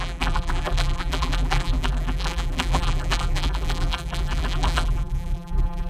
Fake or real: fake